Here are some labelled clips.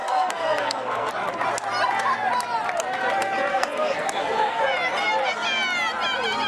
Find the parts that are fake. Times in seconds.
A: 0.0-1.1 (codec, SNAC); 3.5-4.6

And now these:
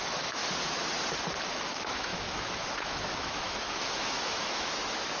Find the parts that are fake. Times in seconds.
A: 0.0-0.4 (autoencoder, DAC-VAE); 1.5-5.2

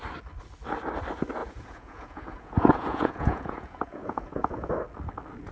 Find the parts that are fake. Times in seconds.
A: 1.4-4.7 (vocoder, Vocos)

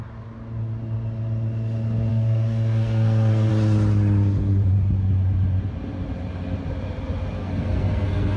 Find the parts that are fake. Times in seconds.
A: 2.1-3.5 (codec, SNAC); 7.4-8.4

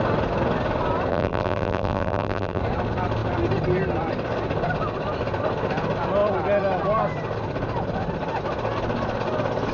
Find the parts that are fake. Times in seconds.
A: 1.1-2.6 (vocoder, BigVGAN v2)